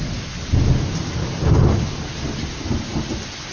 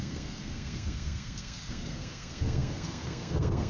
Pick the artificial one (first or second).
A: second